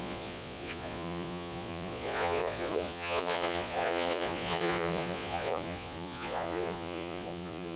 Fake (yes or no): yes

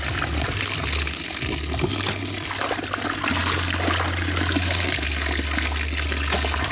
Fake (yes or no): no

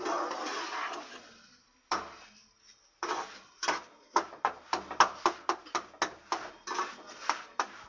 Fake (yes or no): no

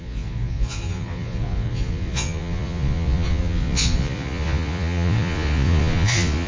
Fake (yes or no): yes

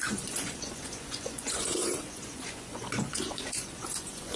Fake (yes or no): yes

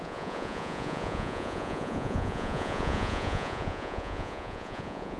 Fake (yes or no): yes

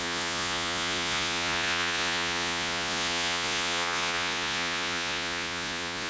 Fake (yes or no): yes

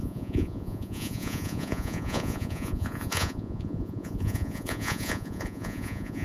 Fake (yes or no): yes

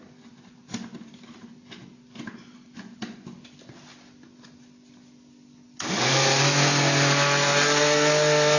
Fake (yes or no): no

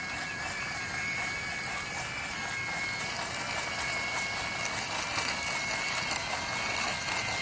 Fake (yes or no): no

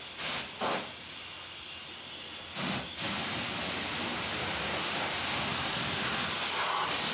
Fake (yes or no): no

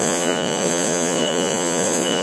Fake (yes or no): yes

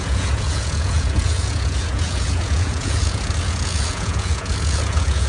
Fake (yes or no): yes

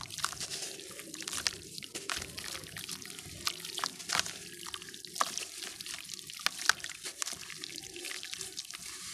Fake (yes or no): no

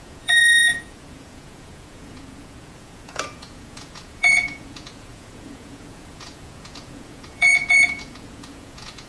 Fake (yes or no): yes